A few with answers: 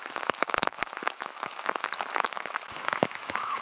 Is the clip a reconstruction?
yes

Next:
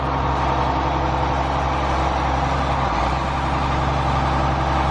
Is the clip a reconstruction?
no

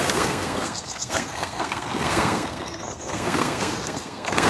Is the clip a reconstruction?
yes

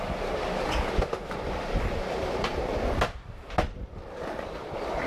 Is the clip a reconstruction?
yes